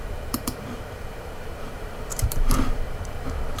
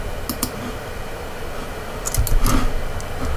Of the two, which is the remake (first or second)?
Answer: first